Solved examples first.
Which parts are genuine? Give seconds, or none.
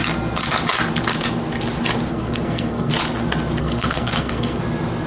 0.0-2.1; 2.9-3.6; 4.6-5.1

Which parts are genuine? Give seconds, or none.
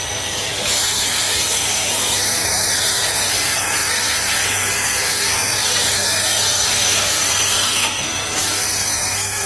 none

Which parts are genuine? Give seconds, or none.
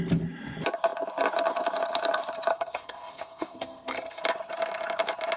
0.0-2.5; 4.2-5.4